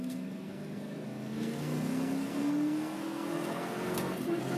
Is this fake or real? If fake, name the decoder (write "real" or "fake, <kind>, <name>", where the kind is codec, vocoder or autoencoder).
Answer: fake, codec, SNAC